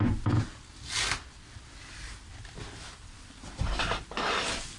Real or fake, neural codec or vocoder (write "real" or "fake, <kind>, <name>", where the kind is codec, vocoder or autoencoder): real